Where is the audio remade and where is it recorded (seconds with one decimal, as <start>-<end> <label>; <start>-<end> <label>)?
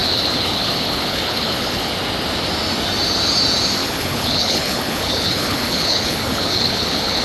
0.0-1.9 remade; 1.9-3.8 recorded; 3.8-7.2 remade